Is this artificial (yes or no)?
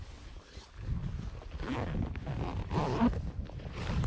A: no